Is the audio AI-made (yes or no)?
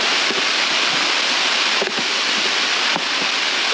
no